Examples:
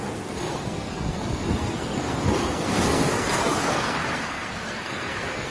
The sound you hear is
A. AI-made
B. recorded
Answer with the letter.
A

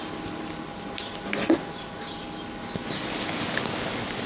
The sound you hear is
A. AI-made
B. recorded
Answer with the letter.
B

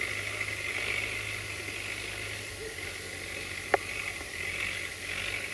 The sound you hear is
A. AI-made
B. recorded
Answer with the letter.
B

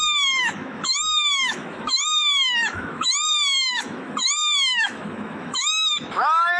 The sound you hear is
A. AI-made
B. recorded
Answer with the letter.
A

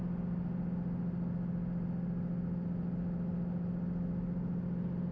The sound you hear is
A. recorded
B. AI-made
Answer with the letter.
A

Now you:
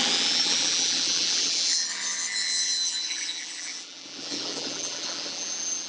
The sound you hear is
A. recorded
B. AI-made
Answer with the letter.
B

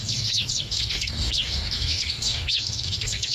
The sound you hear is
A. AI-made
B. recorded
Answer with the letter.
A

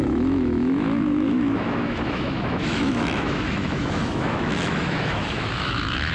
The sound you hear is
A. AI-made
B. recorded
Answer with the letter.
A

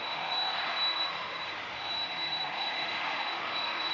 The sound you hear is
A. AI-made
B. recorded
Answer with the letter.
A